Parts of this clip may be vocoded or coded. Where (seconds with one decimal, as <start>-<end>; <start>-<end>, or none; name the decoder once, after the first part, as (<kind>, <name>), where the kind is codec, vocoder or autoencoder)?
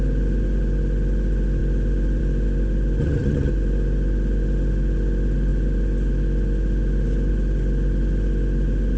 3.0-3.5 (vocoder, HiFi-GAN)